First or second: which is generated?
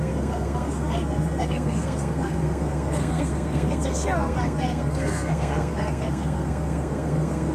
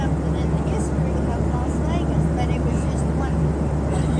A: first